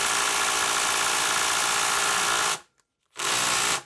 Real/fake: real